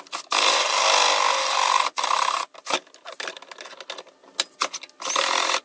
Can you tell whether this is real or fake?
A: real